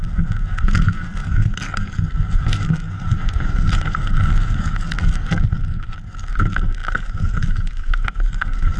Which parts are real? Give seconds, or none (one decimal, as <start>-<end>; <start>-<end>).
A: none